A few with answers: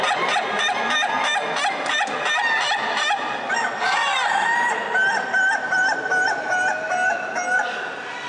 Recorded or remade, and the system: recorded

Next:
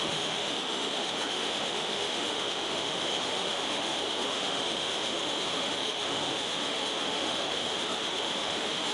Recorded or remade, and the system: remade, autoencoder, DAC-VAE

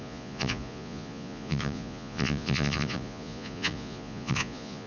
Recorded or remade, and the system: remade, vocoder, Vocos